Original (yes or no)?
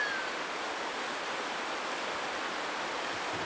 yes